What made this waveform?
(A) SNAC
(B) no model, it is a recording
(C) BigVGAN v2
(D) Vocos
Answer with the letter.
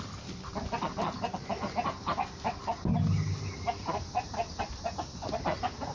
B